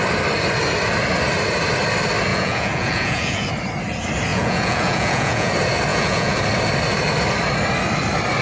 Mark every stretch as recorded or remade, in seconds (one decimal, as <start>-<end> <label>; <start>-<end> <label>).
0.0-2.3 recorded; 2.3-3.5 remade; 3.5-4.3 recorded; 4.3-5.5 remade; 5.5-5.9 recorded; 5.9-6.4 remade; 6.4-8.4 recorded